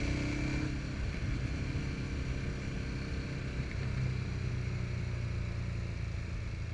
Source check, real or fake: real